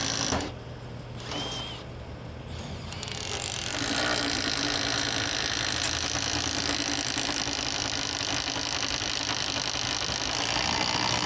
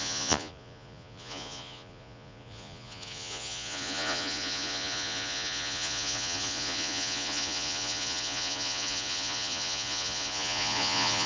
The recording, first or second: first